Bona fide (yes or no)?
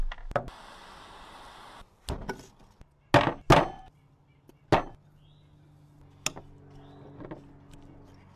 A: yes